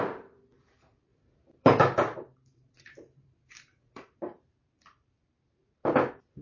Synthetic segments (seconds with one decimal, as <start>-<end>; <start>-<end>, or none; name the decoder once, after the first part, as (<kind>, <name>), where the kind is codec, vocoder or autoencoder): 0.0-5.8 (vocoder, BigVGAN v2)